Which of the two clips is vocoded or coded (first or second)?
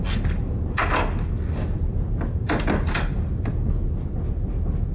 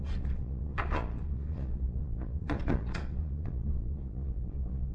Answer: second